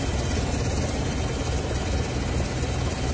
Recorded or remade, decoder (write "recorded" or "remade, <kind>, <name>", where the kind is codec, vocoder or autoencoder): recorded